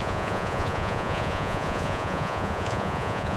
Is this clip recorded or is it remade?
remade